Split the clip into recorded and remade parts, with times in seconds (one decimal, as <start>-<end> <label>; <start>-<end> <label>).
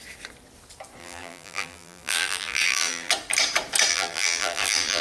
0.0-1.0 recorded; 1.0-3.1 remade; 3.1-3.9 recorded; 3.9-5.0 remade